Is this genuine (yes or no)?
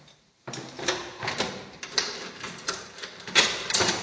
no